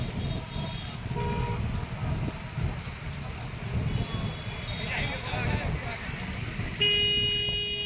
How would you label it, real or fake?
real